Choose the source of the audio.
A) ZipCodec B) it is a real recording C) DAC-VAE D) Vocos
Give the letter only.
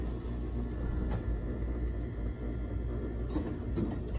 B